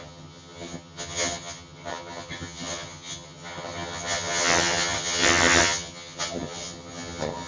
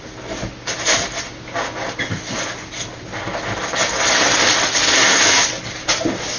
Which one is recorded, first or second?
second